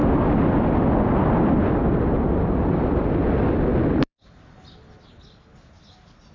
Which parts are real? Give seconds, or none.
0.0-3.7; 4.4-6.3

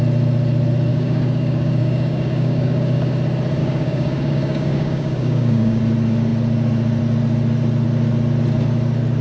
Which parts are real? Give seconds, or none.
0.0-0.9; 3.1-3.6; 5.8-9.2

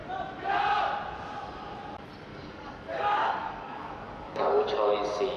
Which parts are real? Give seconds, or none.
0.0-2.3; 4.9-5.4

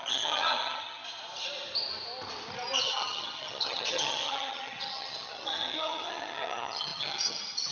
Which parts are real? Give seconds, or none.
1.0-2.8

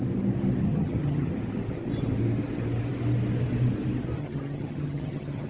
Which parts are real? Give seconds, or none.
0.0-0.6; 1.3-4.2